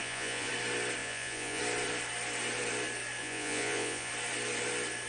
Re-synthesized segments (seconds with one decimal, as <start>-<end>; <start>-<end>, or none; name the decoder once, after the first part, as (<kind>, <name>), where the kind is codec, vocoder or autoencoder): 0.0-0.5 (vocoder, Vocos); 1.0-1.6; 3.2-4.1